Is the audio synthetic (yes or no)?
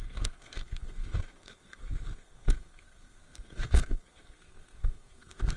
yes